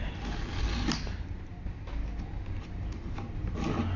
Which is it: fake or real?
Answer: real